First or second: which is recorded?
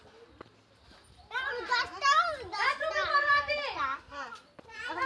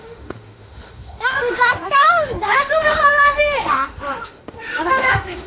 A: first